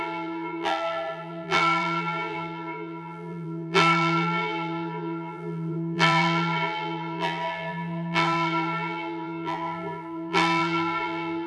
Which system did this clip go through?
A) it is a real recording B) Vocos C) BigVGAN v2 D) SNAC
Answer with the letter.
C